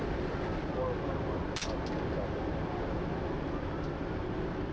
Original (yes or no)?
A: yes